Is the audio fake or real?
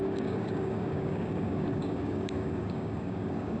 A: fake